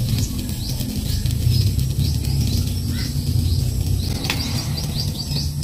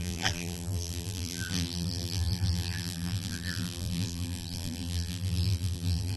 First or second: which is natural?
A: first